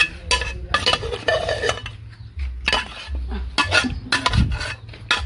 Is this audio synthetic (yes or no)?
no